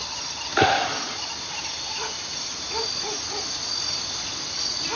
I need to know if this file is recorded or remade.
recorded